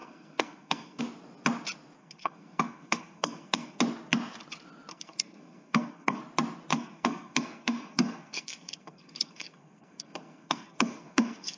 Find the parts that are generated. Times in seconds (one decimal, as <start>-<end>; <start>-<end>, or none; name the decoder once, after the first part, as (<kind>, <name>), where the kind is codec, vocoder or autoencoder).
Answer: 0.0-1.0 (codec, SNAC); 2.0-3.8; 4.9-6.2; 6.7-11.6